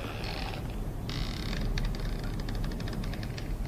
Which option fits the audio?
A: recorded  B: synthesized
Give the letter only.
A